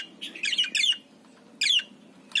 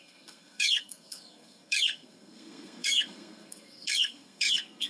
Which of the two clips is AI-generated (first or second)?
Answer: second